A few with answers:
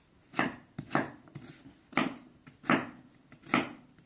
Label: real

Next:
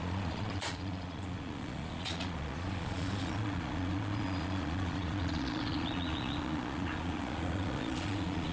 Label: fake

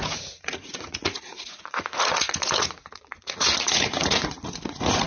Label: fake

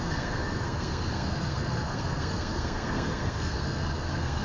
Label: fake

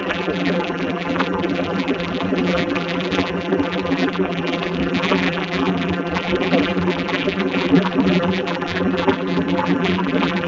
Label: fake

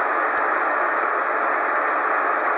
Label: real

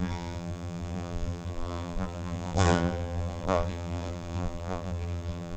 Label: fake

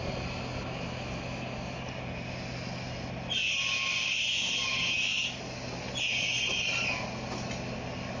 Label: real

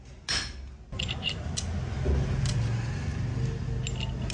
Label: real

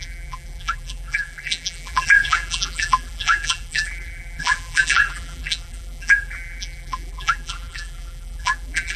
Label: fake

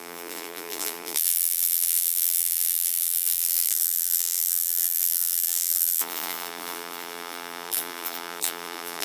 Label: fake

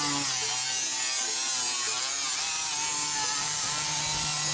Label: real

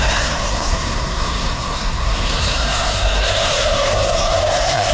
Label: fake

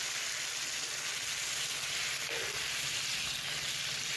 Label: real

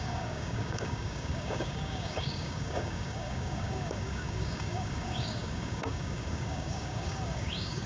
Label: fake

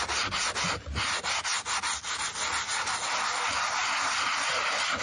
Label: real